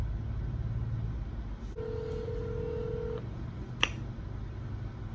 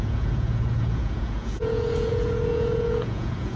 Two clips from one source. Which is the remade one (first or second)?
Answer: second